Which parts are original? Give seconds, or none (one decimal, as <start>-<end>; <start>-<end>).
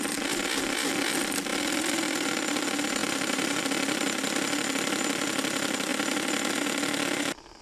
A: 0.0-3.0; 3.6-7.6